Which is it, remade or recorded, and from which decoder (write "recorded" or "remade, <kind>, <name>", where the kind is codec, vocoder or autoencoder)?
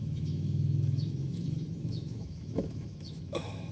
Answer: remade, autoencoder, DAC-VAE